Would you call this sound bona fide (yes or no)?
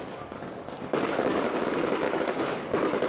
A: no